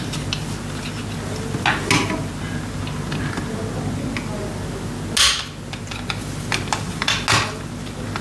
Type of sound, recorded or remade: recorded